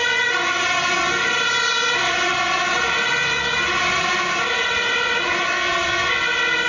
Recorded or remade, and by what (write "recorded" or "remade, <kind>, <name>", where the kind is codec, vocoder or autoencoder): recorded